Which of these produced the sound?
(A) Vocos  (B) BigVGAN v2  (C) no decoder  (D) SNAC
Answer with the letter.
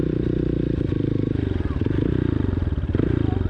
C